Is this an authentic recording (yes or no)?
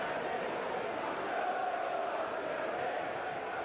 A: yes